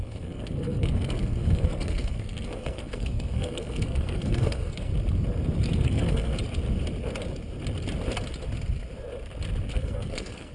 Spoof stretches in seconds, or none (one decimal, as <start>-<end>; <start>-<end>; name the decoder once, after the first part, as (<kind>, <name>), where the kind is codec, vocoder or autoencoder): 0.0-4.9 (codec, SNAC); 5.6-6.3; 9.7-10.5